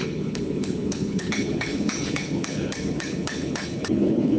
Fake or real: fake